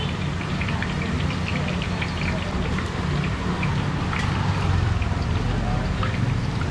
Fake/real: real